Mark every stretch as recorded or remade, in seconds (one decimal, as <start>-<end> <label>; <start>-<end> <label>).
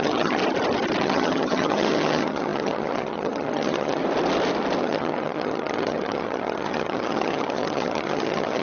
0.0-0.4 remade; 0.4-1.0 recorded; 1.0-4.0 remade; 4.0-4.8 recorded; 4.8-8.6 remade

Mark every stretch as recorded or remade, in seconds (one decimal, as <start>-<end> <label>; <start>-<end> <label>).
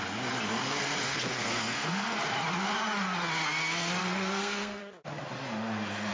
0.0-1.2 recorded; 1.2-2.2 remade; 2.2-4.0 recorded; 4.0-4.8 remade; 4.8-6.1 recorded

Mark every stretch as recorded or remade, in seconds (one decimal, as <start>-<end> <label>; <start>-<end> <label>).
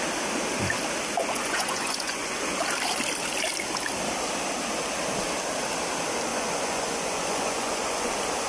0.0-1.2 recorded; 1.2-2.4 remade; 2.4-6.3 recorded; 6.3-8.1 remade; 8.1-8.5 recorded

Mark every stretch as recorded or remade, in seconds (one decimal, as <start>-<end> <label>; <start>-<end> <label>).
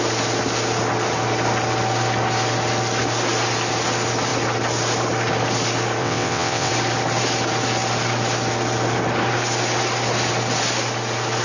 0.0-6.0 recorded; 6.0-6.7 remade; 6.7-11.4 recorded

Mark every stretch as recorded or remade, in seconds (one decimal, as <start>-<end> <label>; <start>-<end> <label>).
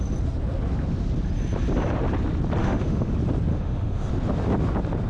0.0-2.6 recorded; 2.6-3.1 remade; 3.1-3.5 recorded; 3.5-4.1 remade; 4.1-5.1 recorded